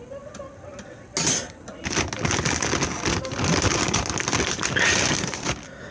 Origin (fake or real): real